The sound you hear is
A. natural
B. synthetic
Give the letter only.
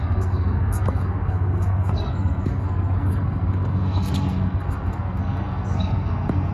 B